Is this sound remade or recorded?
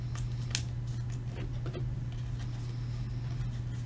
recorded